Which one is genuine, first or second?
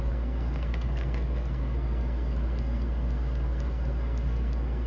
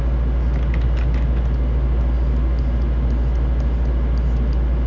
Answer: second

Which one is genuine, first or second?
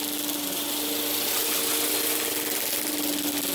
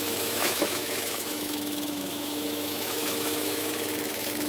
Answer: first